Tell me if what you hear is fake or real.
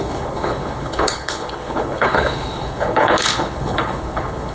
fake